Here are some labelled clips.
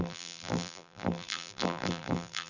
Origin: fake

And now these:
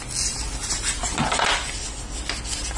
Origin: real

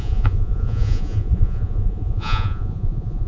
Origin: fake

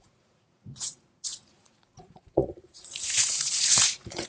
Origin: fake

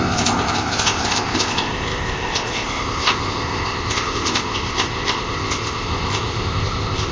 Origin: fake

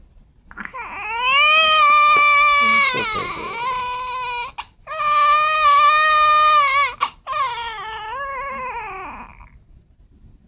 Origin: real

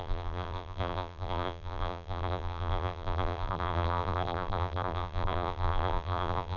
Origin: fake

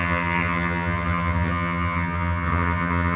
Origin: fake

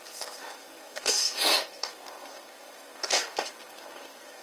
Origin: fake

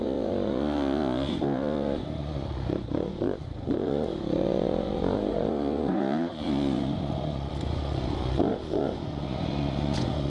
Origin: fake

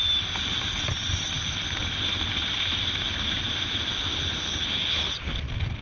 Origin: real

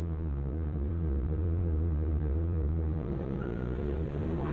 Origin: fake